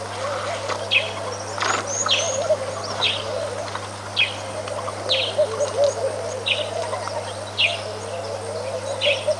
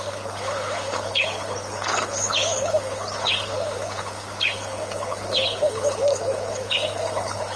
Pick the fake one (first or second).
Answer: second